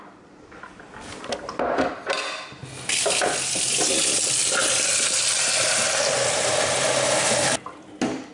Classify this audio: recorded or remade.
recorded